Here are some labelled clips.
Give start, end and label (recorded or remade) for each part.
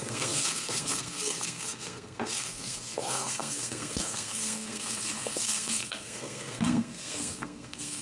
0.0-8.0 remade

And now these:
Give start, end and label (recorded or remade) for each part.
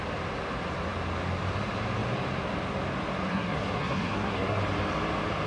0.0-3.3 recorded; 3.3-4.6 remade; 4.6-5.5 recorded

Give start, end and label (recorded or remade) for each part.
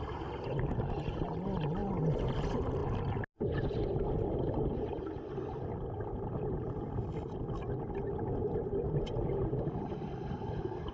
0.0-10.9 recorded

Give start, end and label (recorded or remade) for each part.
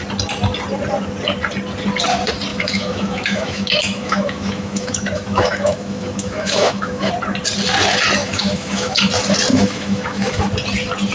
0.0-2.5 recorded; 2.5-7.1 remade; 7.1-8.2 recorded; 8.2-9.1 remade; 9.1-9.5 recorded; 9.5-10.4 remade; 10.4-11.1 recorded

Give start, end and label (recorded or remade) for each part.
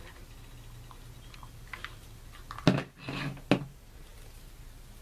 0.0-5.0 recorded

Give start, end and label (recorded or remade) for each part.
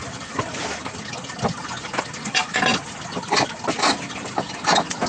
0.0-5.1 recorded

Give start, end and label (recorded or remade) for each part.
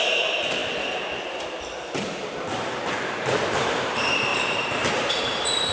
0.0-0.6 remade; 0.6-3.5 recorded; 3.5-5.7 remade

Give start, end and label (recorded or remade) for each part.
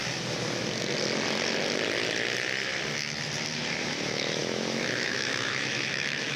0.0-3.8 recorded; 3.8-6.4 remade